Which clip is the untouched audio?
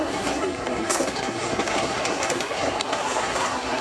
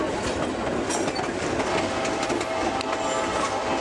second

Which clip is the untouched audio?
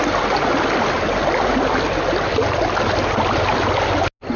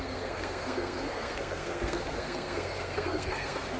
first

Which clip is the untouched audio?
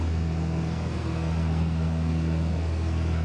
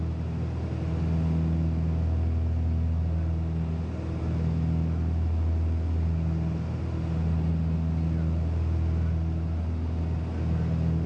second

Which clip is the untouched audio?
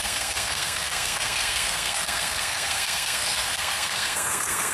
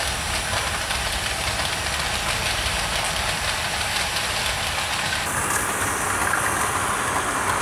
second